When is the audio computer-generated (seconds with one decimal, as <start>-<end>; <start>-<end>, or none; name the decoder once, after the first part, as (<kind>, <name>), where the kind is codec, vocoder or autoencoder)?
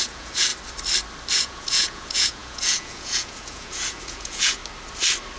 0.0-0.5 (vocoder, Vocos); 1.3-4.6